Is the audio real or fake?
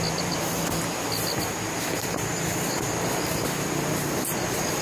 real